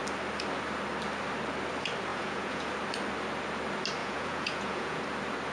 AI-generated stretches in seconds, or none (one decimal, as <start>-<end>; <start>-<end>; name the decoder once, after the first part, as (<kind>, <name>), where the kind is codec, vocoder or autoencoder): 2.1-2.7 (vocoder, Vocos); 4.0-5.0